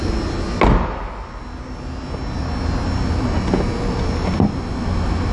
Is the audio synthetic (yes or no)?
no